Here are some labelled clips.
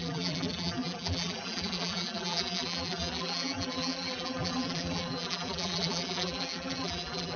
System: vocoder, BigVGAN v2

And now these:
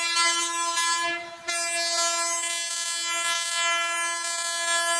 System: none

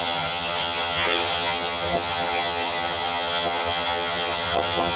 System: vocoder, HiFi-GAN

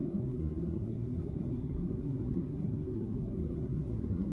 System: codec, SNAC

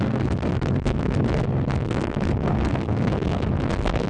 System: codec, SNAC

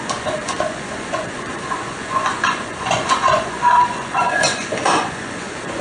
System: vocoder, Vocos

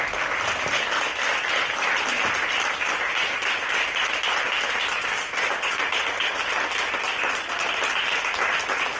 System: none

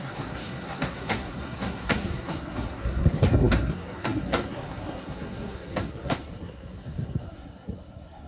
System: codec, SNAC